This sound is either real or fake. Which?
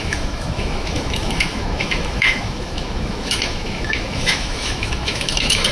fake